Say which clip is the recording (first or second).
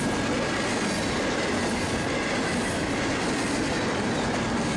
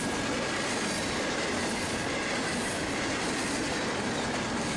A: first